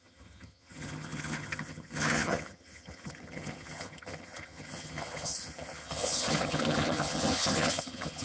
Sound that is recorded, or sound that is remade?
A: remade